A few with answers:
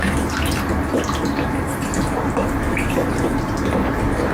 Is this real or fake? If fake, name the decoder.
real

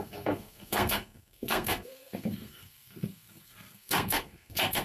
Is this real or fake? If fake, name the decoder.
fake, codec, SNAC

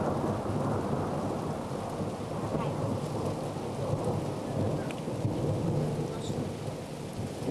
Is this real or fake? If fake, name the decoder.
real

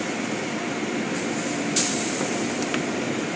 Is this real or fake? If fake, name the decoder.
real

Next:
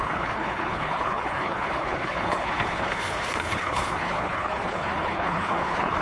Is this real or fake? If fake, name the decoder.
fake, codec, HILCodec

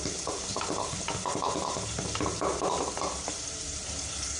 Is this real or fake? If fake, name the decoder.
real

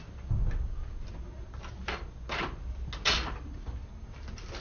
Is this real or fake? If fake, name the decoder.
real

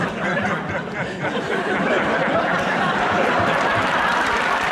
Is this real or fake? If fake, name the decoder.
fake, vocoder, BigVGAN v2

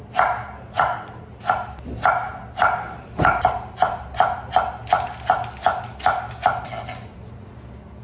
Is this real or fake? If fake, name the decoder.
real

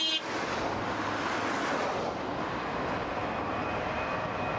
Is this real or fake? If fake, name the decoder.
real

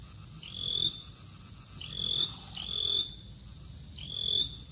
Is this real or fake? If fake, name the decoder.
real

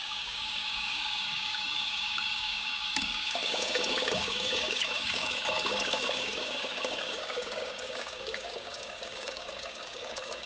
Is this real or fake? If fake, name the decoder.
fake, codec, DAC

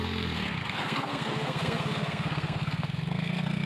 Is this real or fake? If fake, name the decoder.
fake, codec, SNAC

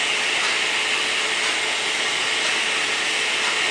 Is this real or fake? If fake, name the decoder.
real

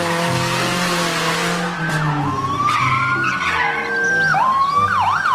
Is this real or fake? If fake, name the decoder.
real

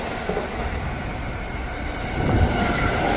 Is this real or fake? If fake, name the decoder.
real